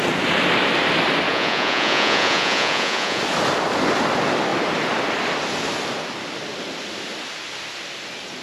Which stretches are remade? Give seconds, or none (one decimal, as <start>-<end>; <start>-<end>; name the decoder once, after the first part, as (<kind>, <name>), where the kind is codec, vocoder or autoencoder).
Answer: 1.3-3.2 (vocoder, Vocos)